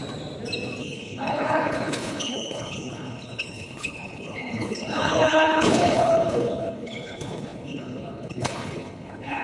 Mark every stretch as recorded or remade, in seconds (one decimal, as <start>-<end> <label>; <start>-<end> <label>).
0.0-0.8 recorded; 0.8-9.4 remade